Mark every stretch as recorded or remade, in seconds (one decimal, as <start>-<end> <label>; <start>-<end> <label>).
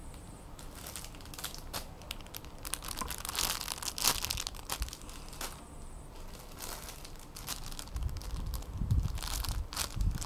0.0-10.3 recorded